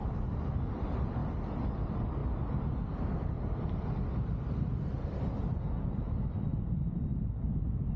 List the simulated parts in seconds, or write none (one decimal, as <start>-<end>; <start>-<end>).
0.7-2.2; 6.6-8.0